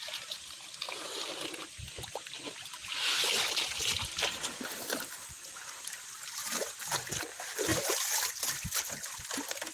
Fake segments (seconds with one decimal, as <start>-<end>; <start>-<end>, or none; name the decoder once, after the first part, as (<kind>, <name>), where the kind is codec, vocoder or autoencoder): none